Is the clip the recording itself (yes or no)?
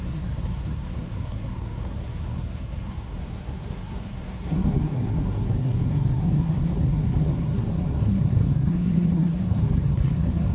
no